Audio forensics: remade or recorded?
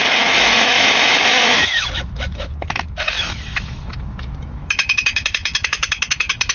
remade